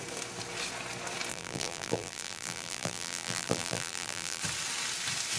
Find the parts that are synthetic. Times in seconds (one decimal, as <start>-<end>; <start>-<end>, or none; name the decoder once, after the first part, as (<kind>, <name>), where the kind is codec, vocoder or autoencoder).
1.3-4.4 (vocoder, BigVGAN v2)